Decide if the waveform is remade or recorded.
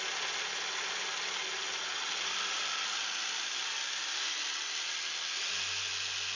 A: recorded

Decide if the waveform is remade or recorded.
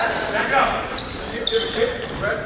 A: remade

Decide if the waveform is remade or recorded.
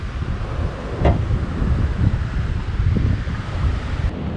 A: recorded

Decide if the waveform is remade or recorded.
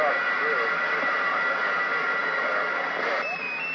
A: recorded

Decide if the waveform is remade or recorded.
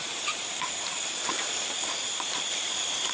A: remade